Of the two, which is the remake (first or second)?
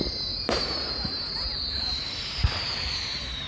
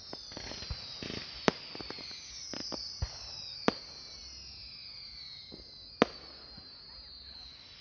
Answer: first